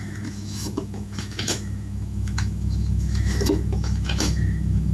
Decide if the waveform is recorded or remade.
remade